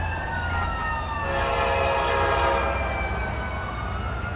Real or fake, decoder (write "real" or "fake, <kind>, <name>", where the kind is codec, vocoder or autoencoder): real